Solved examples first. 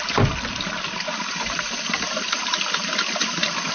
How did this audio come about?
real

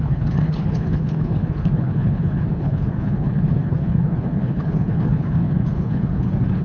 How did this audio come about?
fake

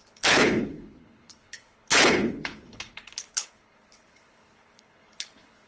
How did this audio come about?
fake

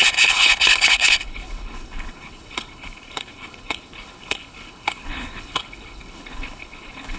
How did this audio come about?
fake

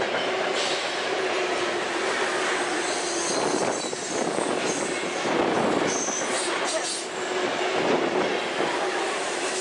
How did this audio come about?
real